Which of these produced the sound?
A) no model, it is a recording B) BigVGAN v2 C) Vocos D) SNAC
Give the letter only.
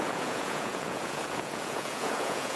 C